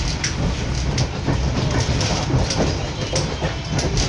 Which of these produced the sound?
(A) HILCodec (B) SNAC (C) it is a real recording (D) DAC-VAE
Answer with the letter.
C